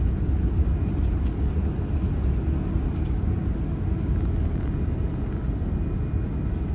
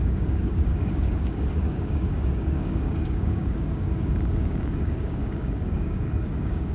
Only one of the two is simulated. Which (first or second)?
second